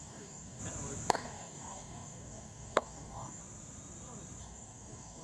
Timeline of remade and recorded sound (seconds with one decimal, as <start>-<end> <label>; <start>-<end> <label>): 0.0-0.6 remade; 0.6-1.1 recorded; 1.1-3.4 remade; 3.4-4.4 recorded; 4.4-5.2 remade